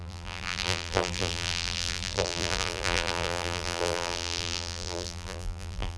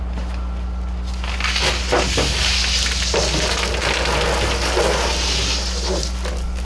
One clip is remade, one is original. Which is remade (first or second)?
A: first